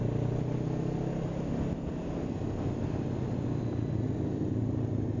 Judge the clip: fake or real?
real